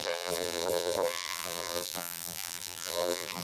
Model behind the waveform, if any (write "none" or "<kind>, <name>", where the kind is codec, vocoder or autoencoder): vocoder, BigVGAN v2